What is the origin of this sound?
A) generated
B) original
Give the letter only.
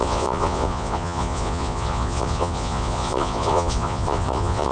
A